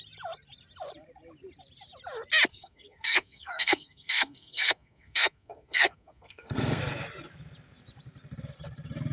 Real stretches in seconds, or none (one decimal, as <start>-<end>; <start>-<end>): 0.0-2.5; 6.8-9.1